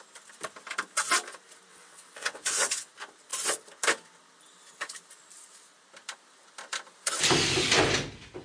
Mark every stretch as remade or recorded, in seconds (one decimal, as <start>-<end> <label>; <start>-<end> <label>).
0.0-1.7 recorded; 1.7-2.9 remade; 2.9-8.4 recorded